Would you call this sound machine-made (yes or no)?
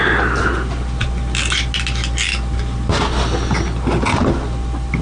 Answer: no